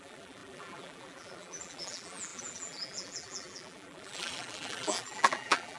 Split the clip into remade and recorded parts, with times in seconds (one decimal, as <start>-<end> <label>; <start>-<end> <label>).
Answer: 0.0-5.8 remade